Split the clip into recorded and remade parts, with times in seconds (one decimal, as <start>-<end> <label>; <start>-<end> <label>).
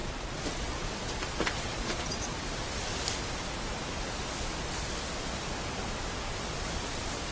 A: 0.0-2.6 remade; 2.6-7.3 recorded